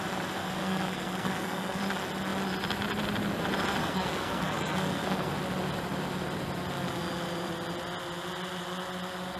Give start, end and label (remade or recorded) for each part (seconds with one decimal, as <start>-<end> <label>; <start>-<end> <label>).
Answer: 0.0-0.4 recorded; 0.4-1.8 remade; 1.8-3.8 recorded; 3.8-5.3 remade; 5.3-9.4 recorded